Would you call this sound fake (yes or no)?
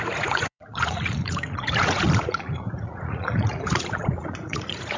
yes